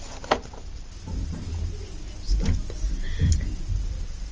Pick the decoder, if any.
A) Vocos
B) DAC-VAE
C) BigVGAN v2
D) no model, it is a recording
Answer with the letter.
D